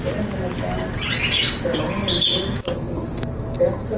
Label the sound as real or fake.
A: real